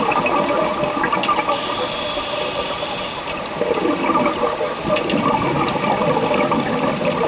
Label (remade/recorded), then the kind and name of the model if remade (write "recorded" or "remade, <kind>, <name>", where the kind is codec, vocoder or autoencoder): recorded